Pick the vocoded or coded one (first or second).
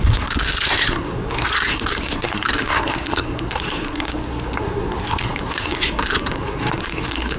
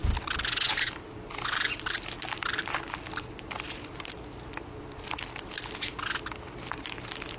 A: first